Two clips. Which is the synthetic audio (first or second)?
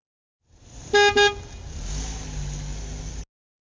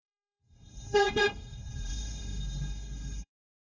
second